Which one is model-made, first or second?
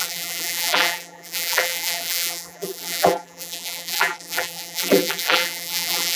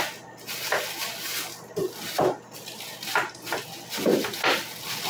first